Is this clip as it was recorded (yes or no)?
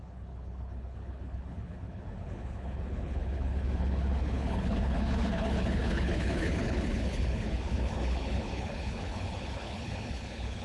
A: no